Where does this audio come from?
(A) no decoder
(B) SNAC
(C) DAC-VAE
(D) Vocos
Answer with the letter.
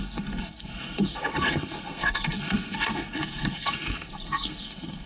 B